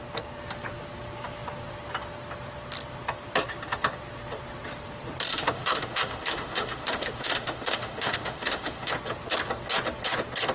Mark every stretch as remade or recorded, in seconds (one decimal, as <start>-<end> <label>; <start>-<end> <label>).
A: 0.0-5.3 recorded; 5.3-8.9 remade; 8.9-10.5 recorded